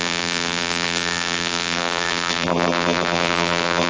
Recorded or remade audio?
remade